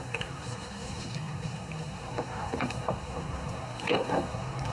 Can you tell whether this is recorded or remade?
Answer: remade